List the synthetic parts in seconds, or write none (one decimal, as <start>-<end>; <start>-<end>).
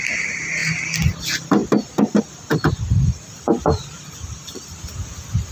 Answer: none